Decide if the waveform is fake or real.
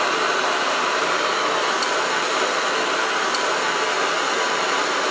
real